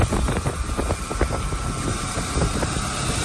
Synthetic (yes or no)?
no